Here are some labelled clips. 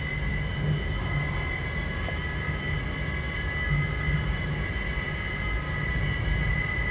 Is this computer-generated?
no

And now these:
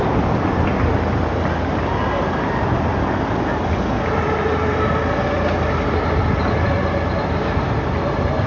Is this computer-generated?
no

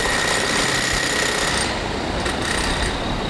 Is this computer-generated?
no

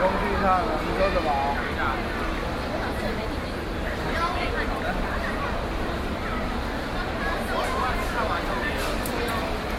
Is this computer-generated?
no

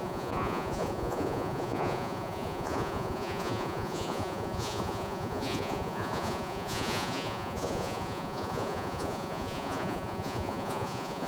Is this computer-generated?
yes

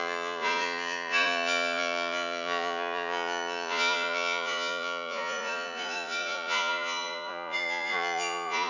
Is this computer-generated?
yes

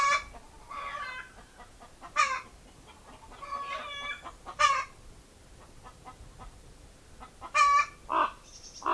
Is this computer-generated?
no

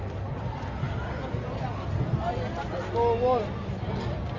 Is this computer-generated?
no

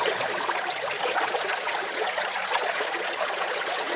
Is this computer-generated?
yes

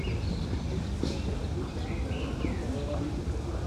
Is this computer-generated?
no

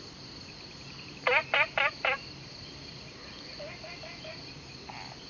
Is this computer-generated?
no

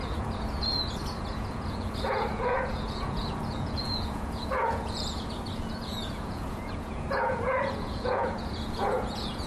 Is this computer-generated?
yes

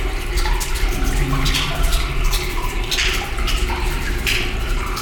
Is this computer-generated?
no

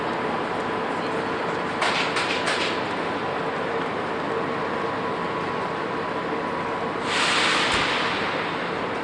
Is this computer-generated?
no